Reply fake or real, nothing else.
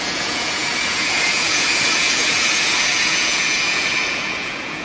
fake